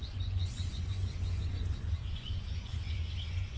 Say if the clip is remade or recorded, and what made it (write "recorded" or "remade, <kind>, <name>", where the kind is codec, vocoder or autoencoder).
remade, vocoder, Vocos